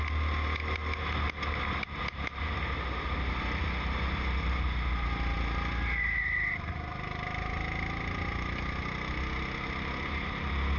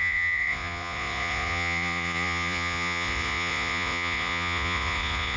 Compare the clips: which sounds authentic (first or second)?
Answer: first